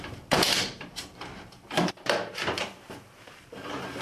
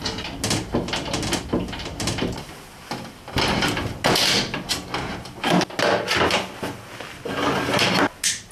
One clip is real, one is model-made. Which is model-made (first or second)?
first